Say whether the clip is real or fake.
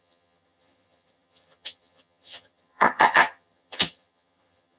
fake